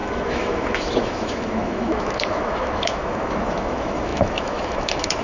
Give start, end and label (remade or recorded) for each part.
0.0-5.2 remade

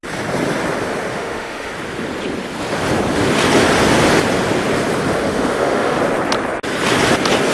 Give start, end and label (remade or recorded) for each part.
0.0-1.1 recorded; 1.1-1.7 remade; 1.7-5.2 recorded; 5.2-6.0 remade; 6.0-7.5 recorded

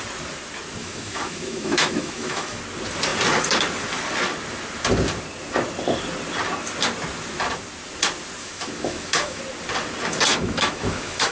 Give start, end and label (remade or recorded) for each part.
0.0-0.8 recorded; 0.8-2.6 remade; 2.6-8.4 recorded; 8.4-9.4 remade; 9.4-10.3 recorded; 10.3-11.3 remade

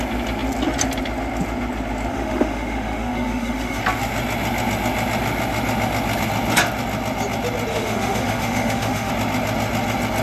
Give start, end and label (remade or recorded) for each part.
0.0-2.1 recorded; 2.1-3.8 remade; 3.8-7.7 recorded; 7.7-9.1 remade; 9.1-10.2 recorded

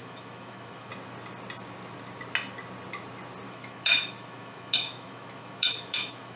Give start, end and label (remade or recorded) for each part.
0.0-0.9 remade; 0.9-3.5 recorded; 3.5-6.4 remade

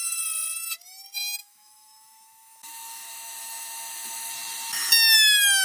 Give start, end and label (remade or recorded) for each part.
0.0-1.4 recorded; 1.4-4.3 remade; 4.3-5.6 recorded

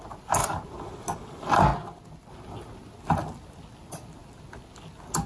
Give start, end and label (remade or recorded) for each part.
0.0-5.3 recorded